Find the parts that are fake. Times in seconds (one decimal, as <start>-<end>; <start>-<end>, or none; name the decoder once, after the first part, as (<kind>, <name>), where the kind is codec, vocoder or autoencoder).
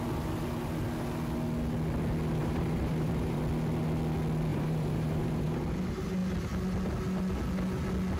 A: 2.4-3.4 (vocoder, BigVGAN v2); 4.5-5.6